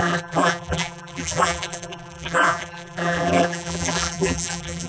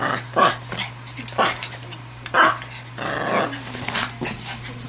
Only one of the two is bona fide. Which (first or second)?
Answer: second